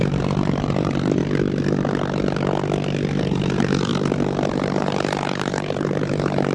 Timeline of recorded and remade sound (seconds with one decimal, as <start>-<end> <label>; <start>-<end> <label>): 0.0-1.2 remade; 1.2-3.2 recorded; 3.2-3.9 remade; 3.9-4.5 recorded; 4.5-6.5 remade